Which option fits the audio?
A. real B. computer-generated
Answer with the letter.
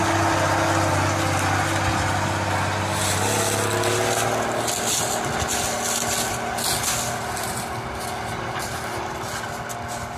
A